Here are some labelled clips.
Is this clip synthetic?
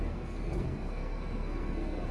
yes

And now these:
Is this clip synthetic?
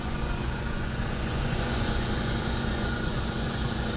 yes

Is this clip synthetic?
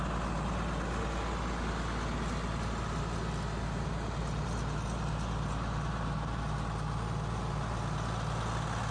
no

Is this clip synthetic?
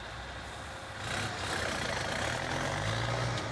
no